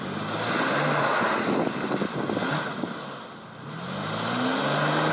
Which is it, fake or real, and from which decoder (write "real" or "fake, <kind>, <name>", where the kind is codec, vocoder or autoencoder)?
real